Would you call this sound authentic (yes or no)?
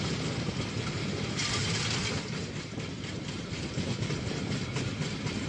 yes